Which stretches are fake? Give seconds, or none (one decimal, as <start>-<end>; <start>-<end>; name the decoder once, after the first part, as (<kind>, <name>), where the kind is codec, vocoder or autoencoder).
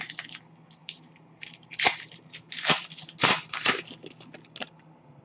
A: 0.8-3.9 (vocoder, BigVGAN v2)